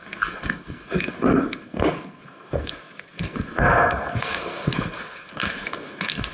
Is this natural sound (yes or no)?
no